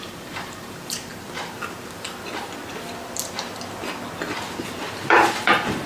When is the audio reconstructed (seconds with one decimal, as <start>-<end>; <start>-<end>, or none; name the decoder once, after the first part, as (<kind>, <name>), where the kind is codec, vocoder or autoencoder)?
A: 0.0-1.1 (vocoder, BigVGAN v2); 4.6-5.9